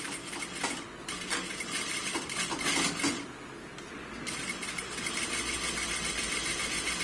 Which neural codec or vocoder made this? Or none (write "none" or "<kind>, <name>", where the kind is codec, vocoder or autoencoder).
none